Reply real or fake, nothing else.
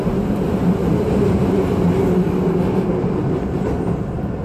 real